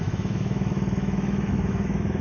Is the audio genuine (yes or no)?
no